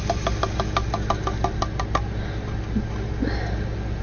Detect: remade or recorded recorded